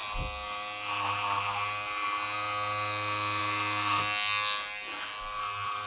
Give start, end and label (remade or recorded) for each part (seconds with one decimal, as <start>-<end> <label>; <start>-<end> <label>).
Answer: 0.0-5.9 recorded